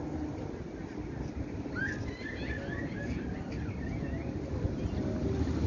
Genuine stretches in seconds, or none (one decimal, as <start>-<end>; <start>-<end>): 0.0-5.7